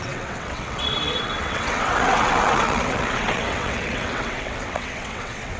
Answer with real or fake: fake